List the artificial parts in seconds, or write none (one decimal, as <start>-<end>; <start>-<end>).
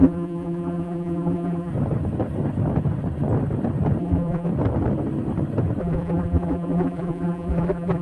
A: 0.0-1.7; 4.0-4.5; 5.8-8.0